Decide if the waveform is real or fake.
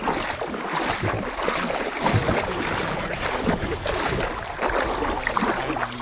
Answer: real